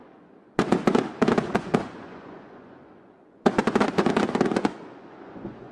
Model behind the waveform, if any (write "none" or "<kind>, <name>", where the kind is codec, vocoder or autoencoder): vocoder, Vocos